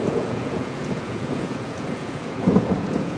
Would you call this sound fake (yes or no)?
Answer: yes